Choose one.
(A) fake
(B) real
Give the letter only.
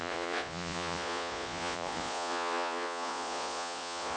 A